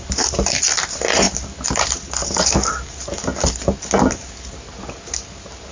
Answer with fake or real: real